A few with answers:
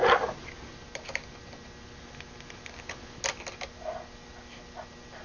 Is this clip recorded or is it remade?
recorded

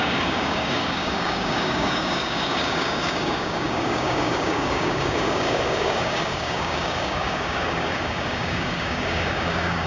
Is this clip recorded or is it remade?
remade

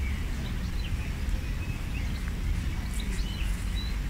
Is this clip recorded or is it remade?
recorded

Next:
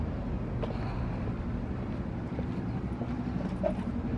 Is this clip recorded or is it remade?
recorded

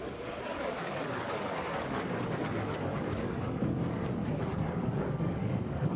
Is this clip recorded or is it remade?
remade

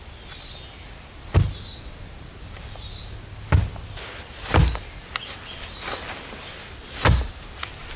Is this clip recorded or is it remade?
recorded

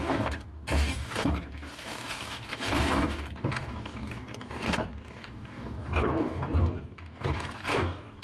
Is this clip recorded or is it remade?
remade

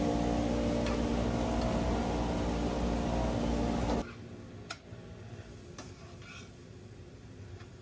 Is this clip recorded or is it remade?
recorded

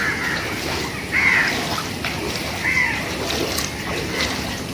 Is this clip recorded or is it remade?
recorded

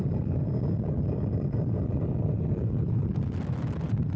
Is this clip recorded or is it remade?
recorded